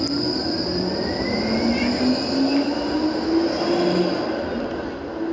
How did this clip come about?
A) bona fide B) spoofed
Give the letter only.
A